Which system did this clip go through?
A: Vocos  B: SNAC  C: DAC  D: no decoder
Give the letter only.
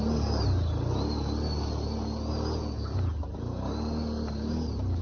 D